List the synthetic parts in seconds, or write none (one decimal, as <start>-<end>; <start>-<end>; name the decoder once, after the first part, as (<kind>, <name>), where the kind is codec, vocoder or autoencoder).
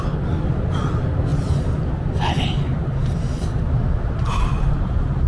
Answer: none